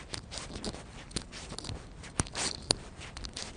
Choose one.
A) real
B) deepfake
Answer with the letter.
A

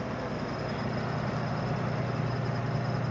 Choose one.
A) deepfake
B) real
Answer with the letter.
B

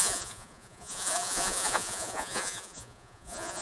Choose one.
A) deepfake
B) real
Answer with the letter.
A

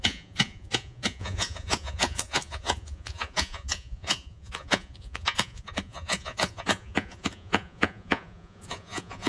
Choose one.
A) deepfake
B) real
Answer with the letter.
A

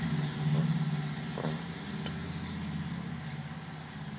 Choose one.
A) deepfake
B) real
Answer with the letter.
B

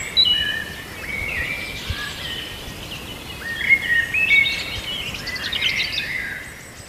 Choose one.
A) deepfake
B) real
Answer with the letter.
B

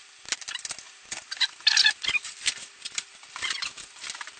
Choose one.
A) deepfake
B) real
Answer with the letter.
B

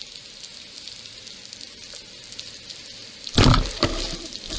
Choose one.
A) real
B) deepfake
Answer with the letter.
A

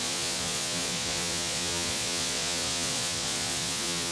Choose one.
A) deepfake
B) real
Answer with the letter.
A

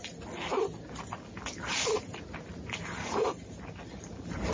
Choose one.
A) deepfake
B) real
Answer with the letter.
B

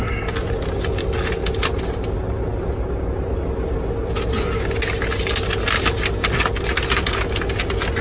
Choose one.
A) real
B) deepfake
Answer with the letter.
A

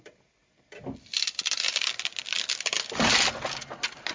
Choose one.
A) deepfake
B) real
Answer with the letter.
B